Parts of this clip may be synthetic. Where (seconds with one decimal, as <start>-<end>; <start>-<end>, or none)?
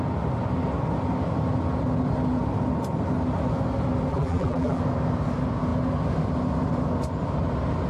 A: 4.1-4.8